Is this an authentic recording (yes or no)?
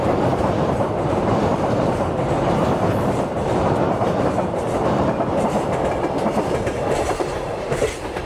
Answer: no